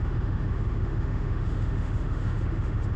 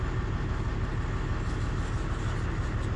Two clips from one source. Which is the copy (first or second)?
first